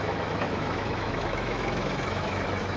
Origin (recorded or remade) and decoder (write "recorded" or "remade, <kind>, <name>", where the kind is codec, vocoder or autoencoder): remade, autoencoder, DAC-VAE